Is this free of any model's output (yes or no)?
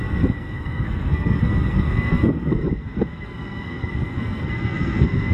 no